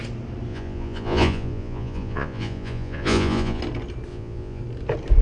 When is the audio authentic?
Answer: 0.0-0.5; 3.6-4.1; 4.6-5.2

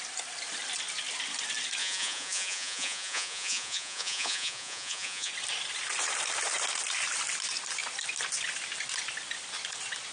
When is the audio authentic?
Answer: 0.0-1.8; 5.3-10.1

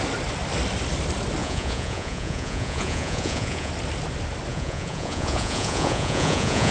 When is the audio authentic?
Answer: 0.0-1.4; 3.7-4.5